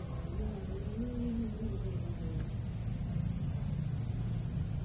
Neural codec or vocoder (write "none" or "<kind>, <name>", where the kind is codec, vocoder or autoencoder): none